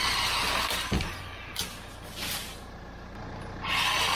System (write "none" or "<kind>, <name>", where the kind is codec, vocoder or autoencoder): none